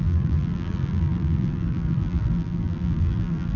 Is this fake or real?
fake